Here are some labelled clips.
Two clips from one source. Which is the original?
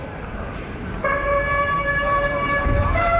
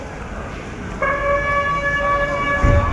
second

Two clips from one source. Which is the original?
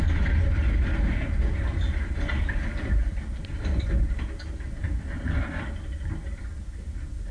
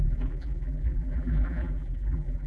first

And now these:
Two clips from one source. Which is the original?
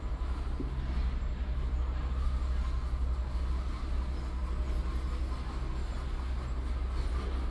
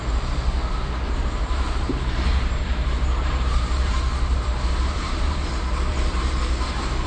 first